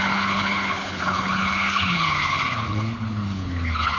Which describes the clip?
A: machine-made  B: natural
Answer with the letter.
A